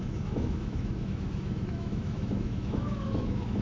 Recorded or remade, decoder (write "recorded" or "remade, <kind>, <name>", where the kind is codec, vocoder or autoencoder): remade, autoencoder, DAC-VAE